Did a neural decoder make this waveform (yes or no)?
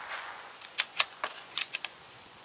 yes